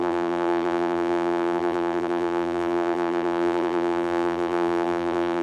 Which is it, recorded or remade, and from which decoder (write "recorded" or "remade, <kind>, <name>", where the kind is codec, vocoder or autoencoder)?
remade, vocoder, BigVGAN v2